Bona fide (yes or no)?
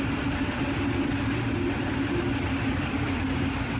yes